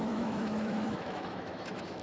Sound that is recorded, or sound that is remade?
remade